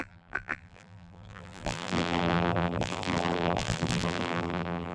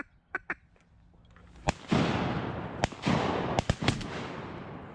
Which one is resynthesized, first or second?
first